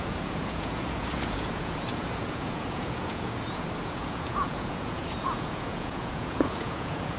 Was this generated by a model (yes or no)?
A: yes